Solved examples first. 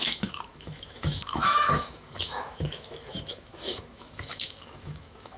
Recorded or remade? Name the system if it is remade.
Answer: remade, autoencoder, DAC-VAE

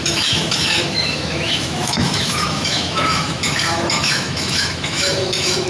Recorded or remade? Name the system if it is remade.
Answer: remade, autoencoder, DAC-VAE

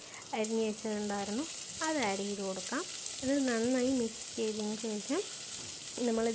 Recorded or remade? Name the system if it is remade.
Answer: recorded